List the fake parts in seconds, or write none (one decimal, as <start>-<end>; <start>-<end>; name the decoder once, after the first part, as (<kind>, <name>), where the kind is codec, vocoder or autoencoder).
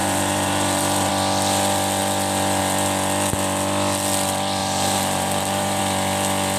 0.0-1.1 (vocoder, BigVGAN v2); 4.6-5.8